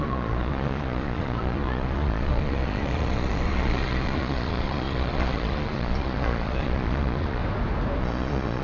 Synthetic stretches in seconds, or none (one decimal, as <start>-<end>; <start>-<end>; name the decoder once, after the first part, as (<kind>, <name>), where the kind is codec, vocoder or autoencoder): 0.0-7.4 (vocoder, Vocos); 8.0-8.6